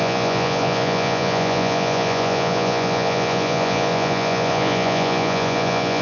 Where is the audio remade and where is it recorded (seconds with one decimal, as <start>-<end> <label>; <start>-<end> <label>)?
0.0-6.0 remade